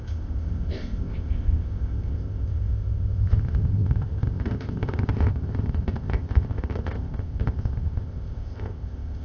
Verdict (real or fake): fake